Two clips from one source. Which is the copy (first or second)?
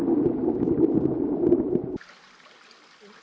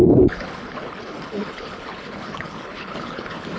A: second